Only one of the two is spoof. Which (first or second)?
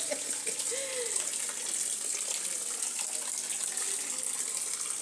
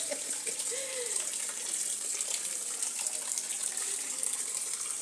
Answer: second